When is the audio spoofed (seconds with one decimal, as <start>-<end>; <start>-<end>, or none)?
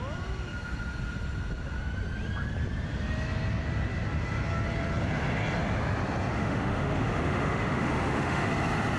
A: 6.3-8.5